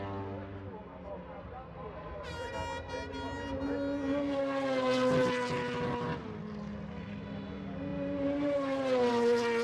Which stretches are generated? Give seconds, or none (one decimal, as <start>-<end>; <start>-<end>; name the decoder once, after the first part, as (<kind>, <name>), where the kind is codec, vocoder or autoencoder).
none